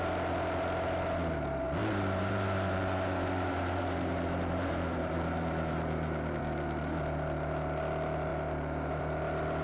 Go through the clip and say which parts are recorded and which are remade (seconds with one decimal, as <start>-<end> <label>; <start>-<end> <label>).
0.0-1.8 recorded; 1.8-6.4 remade; 6.4-9.6 recorded